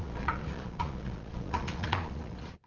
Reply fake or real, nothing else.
fake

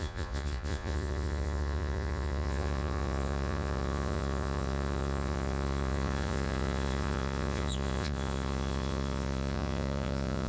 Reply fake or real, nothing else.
fake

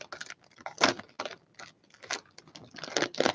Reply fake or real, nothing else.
real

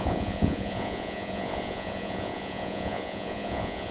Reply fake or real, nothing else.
fake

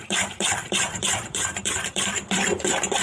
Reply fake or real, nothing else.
fake